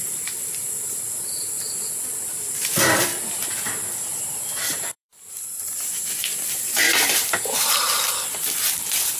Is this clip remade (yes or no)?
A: yes